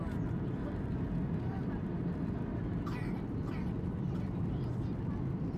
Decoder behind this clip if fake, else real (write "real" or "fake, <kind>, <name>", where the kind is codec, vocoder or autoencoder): fake, vocoder, BigVGAN v2